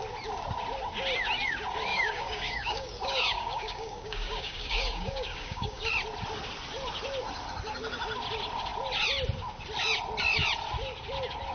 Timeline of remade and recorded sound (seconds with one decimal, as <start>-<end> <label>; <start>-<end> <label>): 0.0-1.9 recorded; 1.9-5.9 remade; 5.9-11.5 recorded